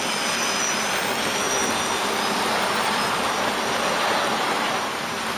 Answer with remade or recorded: recorded